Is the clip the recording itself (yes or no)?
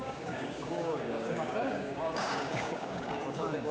no